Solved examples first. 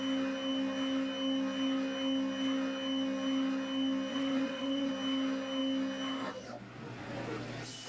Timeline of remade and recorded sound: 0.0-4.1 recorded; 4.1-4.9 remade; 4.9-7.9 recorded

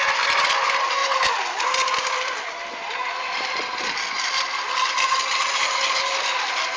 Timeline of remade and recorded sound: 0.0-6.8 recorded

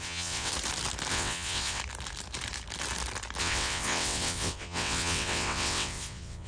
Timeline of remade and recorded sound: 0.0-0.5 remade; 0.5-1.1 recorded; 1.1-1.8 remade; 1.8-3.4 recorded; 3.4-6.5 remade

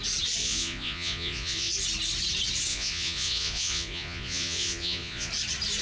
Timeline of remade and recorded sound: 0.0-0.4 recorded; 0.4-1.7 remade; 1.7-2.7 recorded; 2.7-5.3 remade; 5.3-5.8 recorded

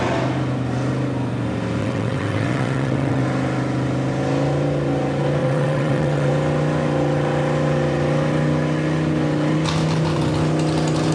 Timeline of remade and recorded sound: 0.0-1.8 recorded; 1.8-3.2 remade; 3.2-5.4 recorded; 5.4-6.3 remade; 6.3-11.1 recorded

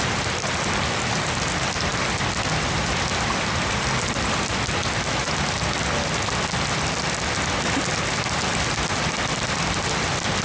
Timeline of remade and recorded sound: 0.0-10.4 recorded